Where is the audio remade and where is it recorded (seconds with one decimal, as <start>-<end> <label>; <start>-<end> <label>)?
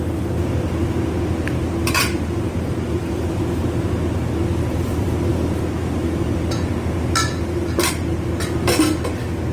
0.0-1.8 recorded; 1.8-3.4 remade; 3.4-9.5 recorded